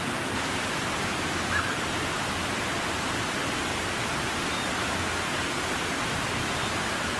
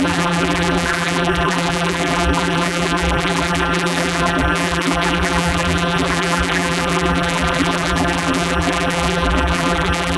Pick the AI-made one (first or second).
second